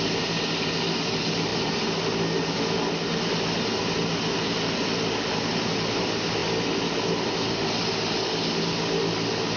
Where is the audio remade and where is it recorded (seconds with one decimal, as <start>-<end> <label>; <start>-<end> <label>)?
0.0-9.6 recorded